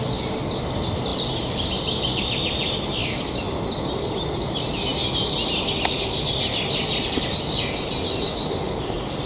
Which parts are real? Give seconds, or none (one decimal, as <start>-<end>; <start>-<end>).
0.0-1.1; 1.7-3.0; 4.1-9.3

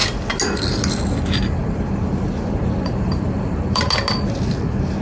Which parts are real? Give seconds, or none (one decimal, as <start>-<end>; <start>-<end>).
0.0-1.6; 3.8-5.0

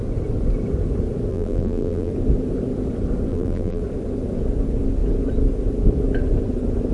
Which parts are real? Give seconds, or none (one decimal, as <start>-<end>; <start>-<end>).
0.0-1.3; 2.1-3.3; 3.8-6.9

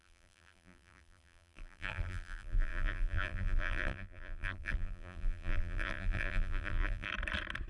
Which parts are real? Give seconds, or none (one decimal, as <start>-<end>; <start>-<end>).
7.1-7.7

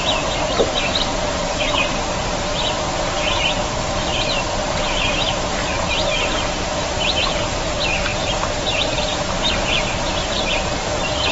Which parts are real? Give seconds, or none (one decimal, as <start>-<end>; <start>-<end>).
none

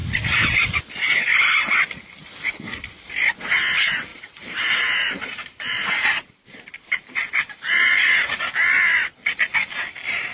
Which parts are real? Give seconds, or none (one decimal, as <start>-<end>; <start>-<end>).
0.0-4.1; 8.8-10.3